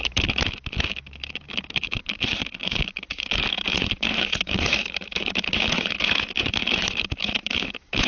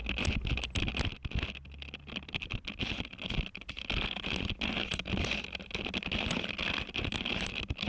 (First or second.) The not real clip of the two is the first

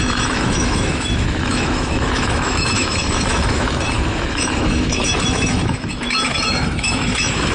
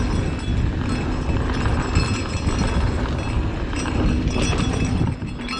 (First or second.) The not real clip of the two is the first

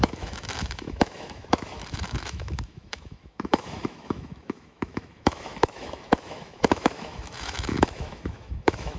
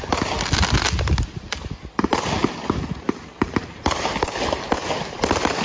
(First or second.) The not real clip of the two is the first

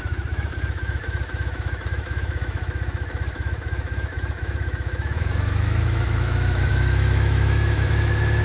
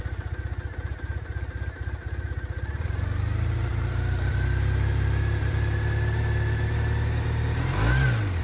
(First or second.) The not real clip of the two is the first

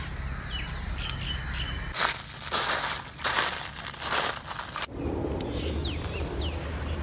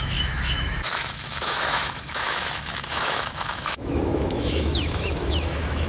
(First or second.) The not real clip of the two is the second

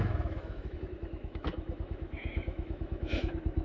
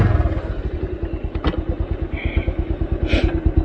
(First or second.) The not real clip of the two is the first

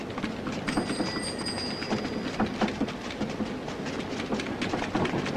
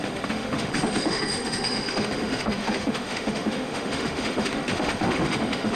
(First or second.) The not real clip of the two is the second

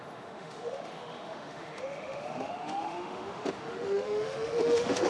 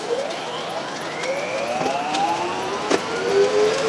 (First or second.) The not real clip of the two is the first